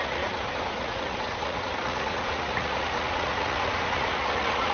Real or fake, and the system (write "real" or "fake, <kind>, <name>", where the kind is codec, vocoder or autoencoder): fake, vocoder, Vocos